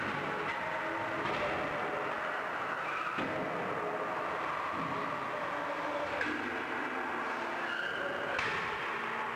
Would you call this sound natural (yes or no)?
yes